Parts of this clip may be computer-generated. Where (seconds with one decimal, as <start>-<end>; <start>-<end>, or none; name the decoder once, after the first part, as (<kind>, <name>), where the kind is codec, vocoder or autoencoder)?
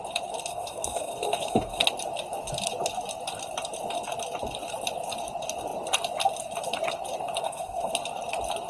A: 0.5-1.8 (codec, SNAC); 7.4-7.9